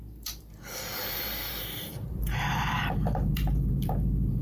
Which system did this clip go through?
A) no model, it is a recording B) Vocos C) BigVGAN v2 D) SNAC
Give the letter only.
C